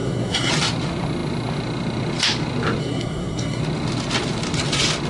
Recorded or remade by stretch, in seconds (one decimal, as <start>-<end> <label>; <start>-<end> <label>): 0.0-0.5 remade; 0.5-2.8 recorded; 2.8-3.6 remade; 3.6-5.1 recorded